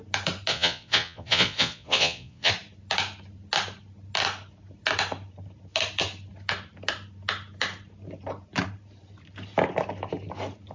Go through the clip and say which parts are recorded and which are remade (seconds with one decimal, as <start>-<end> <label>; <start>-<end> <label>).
0.0-0.5 recorded; 0.5-2.5 remade; 2.5-10.7 recorded